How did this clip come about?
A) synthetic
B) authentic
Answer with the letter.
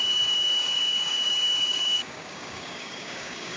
A